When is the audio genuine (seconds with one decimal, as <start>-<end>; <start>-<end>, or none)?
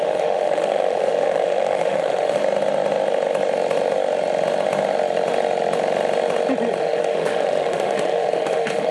2.4-6.8